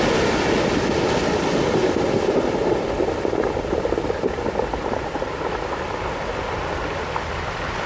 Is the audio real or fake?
real